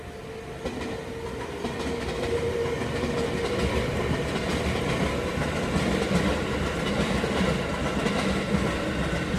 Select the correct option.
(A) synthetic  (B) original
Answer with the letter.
B